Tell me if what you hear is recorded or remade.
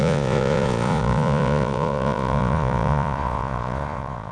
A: remade